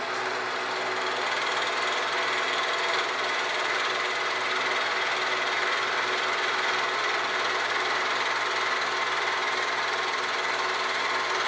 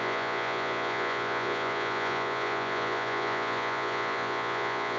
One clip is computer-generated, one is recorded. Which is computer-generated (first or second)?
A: second